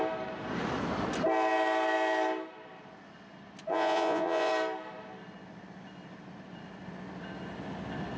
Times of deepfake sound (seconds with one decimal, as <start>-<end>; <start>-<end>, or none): 3.7-4.5